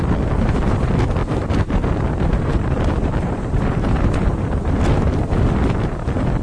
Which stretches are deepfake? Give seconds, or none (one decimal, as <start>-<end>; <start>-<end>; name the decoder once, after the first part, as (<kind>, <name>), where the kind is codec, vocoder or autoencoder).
1.2-4.8 (vocoder, BigVGAN v2)